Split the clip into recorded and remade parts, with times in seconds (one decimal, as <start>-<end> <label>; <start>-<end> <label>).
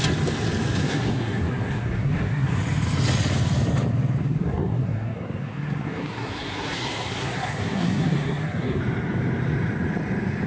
0.0-0.8 recorded; 0.8-2.6 remade; 2.6-4.2 recorded; 4.2-8.8 remade; 8.8-10.5 recorded